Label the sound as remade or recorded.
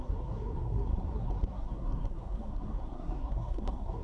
remade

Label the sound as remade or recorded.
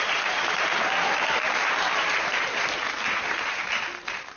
remade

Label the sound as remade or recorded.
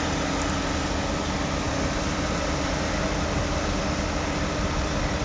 recorded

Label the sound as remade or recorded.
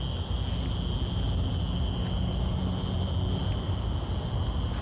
recorded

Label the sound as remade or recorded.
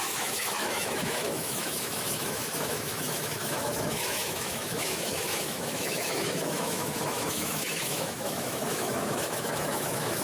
remade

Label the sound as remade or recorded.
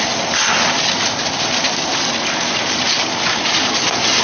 recorded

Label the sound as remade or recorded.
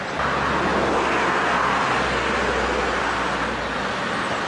recorded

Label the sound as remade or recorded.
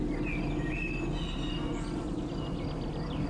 recorded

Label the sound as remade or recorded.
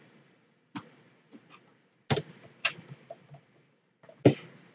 recorded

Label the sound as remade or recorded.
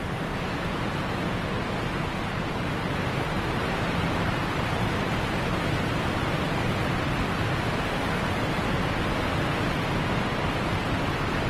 recorded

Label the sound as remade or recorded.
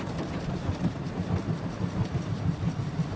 remade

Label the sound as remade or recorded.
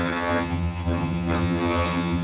remade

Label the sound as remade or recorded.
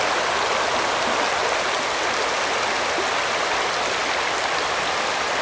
recorded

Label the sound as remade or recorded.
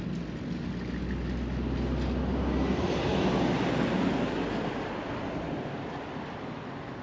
recorded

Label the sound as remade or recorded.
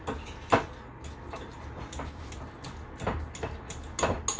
recorded